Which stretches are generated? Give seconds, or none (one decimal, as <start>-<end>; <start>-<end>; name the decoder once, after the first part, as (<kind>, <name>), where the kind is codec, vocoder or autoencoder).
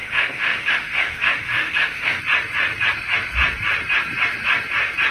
0.0-2.2 (autoencoder, DAC-VAE)